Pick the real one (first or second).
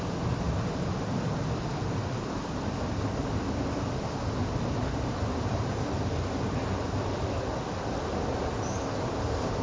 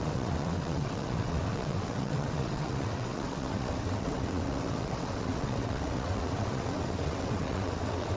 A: first